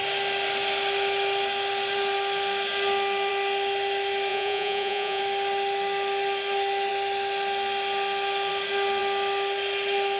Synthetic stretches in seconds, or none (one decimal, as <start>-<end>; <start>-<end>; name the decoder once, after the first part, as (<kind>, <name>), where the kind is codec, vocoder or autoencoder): 4.3-5.2 (vocoder, Vocos)